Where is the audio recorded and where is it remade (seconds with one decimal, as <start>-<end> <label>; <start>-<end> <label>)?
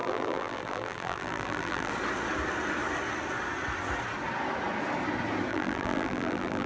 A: 0.0-1.9 remade; 1.9-5.5 recorded; 5.5-6.7 remade